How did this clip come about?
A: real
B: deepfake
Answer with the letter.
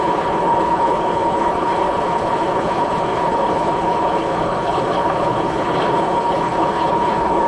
B